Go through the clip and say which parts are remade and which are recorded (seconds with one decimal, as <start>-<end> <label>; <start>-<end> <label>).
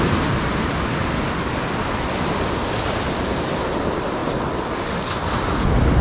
0.0-6.0 recorded